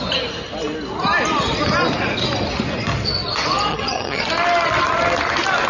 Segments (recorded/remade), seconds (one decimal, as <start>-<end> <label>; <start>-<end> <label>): 0.0-3.7 recorded; 3.7-4.2 remade; 4.2-5.7 recorded